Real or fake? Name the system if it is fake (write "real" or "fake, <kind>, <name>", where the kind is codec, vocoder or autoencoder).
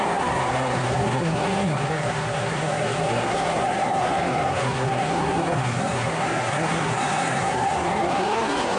fake, codec, SNAC